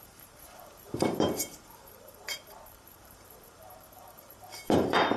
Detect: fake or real fake